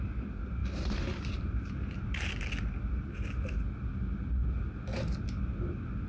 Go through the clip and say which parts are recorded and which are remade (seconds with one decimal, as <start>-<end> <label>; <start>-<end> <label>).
0.0-0.6 recorded; 0.6-2.3 remade; 2.3-6.1 recorded